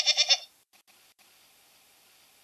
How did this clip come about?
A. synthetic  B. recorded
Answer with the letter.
B